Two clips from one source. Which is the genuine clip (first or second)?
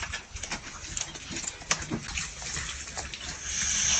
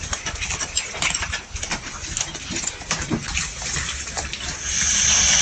first